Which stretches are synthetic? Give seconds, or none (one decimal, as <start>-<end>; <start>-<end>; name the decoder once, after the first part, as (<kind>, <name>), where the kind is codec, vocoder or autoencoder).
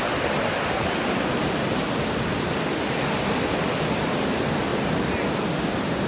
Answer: none